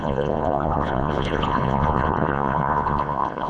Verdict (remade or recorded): remade